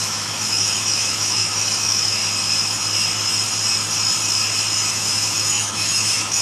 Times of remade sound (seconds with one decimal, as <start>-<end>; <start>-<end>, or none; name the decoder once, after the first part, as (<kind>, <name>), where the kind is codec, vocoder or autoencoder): 0.0-2.2 (autoencoder, DAC-VAE); 4.9-6.4